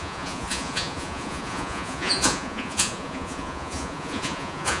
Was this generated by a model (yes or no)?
yes